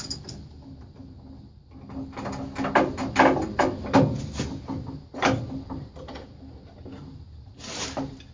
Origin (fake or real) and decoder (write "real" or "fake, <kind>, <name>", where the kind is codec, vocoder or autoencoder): real